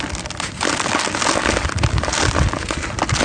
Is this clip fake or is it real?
real